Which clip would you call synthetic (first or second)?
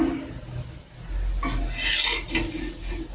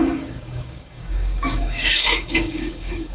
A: second